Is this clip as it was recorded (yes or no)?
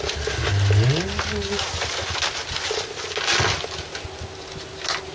yes